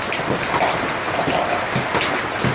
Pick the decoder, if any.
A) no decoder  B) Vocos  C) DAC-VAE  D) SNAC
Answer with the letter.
A